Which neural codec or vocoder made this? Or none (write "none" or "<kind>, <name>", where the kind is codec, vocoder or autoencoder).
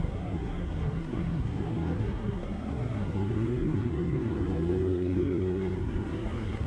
codec, SNAC